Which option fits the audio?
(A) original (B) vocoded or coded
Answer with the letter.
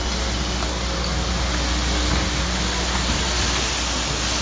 A